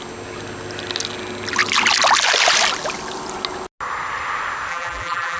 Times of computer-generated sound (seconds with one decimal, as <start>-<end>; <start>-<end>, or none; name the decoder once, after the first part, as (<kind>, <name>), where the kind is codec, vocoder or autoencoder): 4.7-5.4 (vocoder, BigVGAN v2)